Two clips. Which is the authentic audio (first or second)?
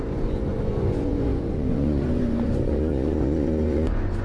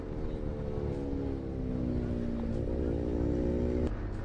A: second